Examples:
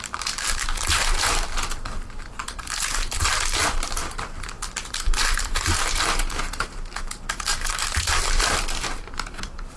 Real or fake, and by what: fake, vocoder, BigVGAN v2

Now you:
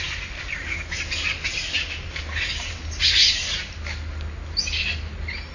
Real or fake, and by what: real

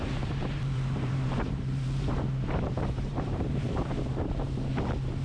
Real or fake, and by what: fake, vocoder, BigVGAN v2